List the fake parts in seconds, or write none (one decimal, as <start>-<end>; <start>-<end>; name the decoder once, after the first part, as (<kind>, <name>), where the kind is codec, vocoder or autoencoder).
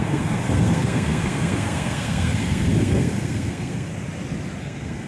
0.0-3.9 (codec, SNAC); 4.6-5.1